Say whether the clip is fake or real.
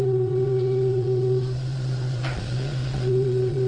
fake